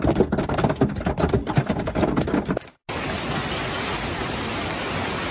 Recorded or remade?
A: recorded